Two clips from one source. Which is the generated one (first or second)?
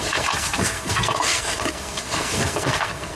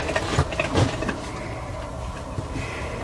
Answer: first